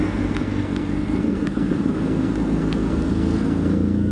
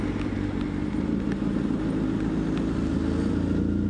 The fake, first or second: first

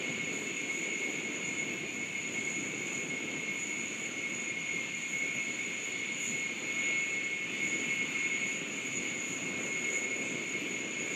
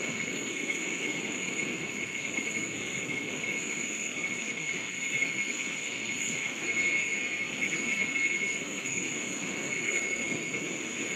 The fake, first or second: second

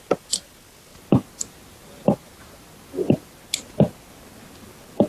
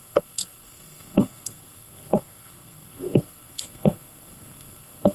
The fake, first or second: second